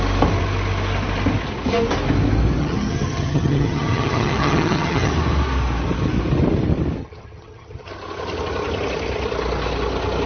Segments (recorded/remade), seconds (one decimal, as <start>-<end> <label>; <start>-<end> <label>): 0.0-2.6 recorded; 2.6-5.1 remade; 5.1-7.0 recorded; 7.0-7.9 remade; 7.9-10.3 recorded